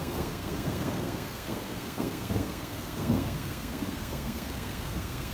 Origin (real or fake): fake